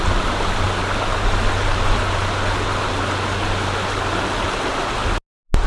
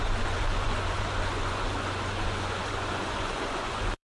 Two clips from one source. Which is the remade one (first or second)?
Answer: second